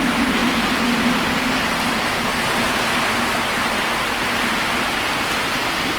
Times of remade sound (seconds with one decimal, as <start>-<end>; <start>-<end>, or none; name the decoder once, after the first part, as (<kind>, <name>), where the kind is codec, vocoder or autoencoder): none